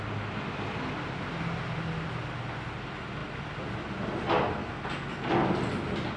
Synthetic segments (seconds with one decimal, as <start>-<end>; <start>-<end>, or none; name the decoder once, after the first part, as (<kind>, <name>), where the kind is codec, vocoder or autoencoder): none

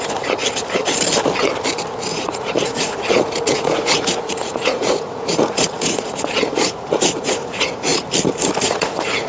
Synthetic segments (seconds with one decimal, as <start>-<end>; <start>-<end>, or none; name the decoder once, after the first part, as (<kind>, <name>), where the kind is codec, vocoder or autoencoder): 0.0-0.4 (vocoder, Vocos); 2.1-7.9; 8.6-9.3